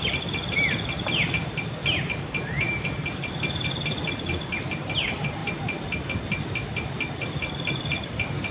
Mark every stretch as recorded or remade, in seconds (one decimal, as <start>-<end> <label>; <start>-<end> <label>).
0.0-1.8 recorded; 1.8-4.7 remade; 4.7-5.4 recorded; 5.4-6.0 remade; 6.0-8.5 recorded